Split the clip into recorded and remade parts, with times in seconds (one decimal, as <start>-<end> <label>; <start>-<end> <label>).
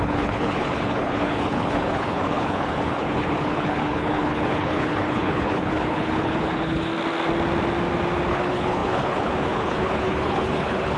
0.0-6.9 remade; 6.9-8.3 recorded; 8.3-11.0 remade